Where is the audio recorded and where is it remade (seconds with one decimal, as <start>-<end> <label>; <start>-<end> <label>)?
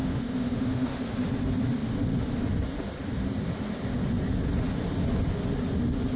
0.0-0.9 remade; 0.9-6.2 recorded